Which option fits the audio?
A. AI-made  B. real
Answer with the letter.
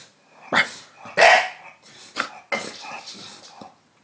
B